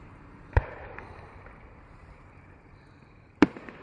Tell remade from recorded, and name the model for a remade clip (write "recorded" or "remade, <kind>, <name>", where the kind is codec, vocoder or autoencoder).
remade, vocoder, BigVGAN v2